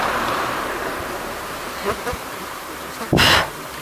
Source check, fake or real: fake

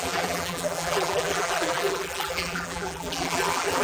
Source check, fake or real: fake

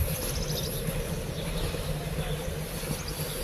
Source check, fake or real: real